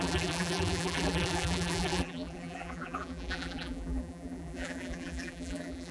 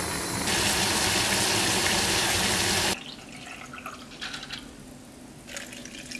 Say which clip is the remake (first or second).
first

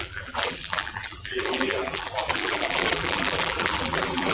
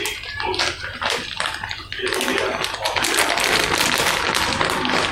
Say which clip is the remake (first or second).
first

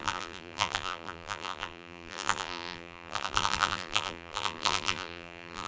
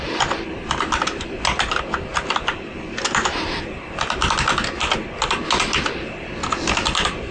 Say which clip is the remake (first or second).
first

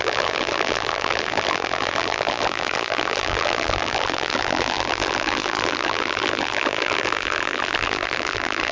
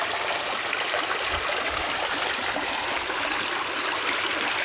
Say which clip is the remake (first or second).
first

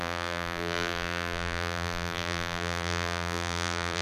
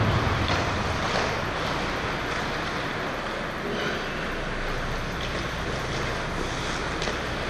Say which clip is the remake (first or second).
first